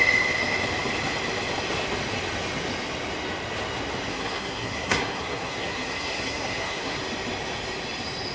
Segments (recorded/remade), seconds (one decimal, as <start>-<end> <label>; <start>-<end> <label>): 0.0-4.1 recorded; 4.1-7.0 remade; 7.0-8.3 recorded